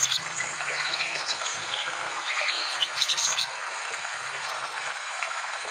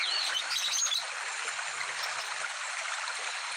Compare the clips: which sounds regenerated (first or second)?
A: first